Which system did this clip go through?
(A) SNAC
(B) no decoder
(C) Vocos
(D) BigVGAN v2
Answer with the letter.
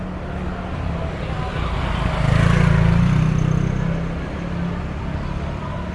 B